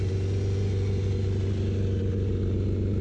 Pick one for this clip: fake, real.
real